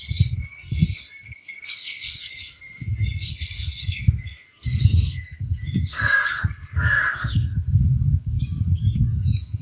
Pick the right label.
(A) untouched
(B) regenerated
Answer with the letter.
B